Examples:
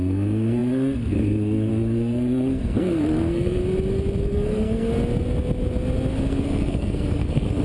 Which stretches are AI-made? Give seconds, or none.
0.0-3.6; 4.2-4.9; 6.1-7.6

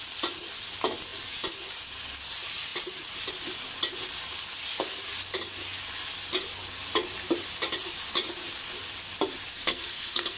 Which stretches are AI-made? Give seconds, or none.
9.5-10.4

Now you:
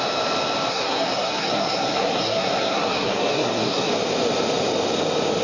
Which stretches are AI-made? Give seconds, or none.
0.7-3.9

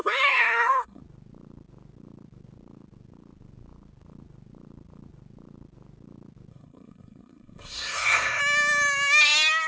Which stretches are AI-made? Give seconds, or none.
0.0-1.0; 6.5-8.4

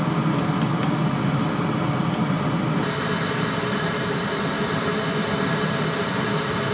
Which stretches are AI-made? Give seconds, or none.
none

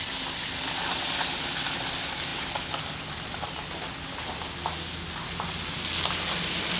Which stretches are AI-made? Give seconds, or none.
none